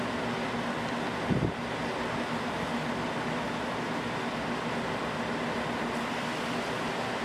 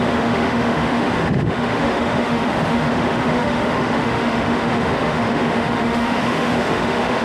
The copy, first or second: second